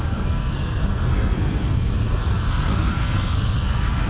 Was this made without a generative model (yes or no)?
no